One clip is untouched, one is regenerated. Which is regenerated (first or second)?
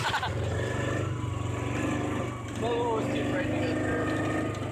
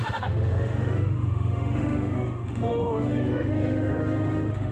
second